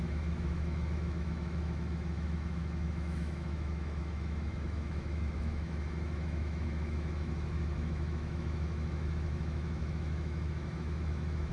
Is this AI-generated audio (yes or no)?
yes